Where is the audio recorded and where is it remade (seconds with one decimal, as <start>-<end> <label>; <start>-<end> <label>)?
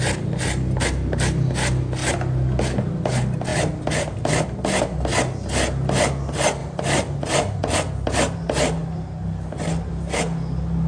0.0-6.6 recorded; 6.6-7.6 remade; 7.6-10.9 recorded